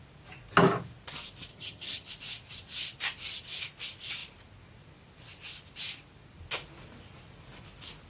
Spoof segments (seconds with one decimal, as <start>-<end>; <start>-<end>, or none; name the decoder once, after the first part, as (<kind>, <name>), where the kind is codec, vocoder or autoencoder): 1.5-2.1 (vocoder, HiFi-GAN)